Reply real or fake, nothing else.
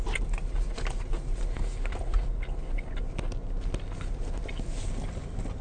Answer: real